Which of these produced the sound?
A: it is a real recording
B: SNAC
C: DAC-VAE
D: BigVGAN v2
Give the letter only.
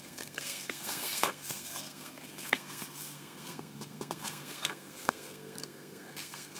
B